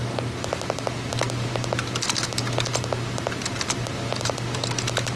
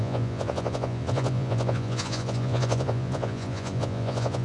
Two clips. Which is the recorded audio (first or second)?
first